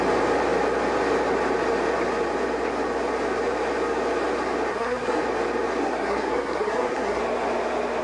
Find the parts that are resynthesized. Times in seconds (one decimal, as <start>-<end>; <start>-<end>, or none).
4.7-5.2; 5.8-7.2